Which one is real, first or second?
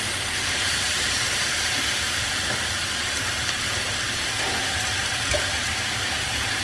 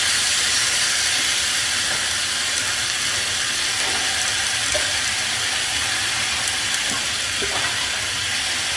second